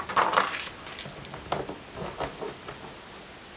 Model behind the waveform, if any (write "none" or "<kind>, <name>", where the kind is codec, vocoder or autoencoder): none